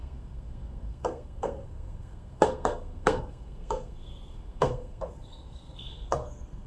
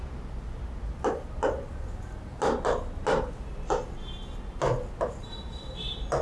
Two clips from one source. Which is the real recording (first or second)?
second